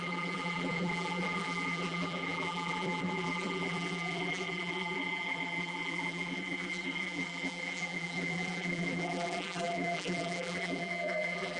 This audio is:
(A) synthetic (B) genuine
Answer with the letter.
A